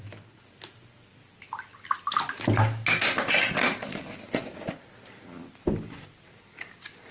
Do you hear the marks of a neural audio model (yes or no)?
no